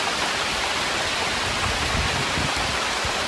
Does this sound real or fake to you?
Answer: fake